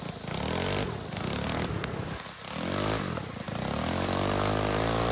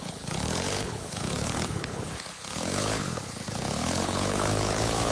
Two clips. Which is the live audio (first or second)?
first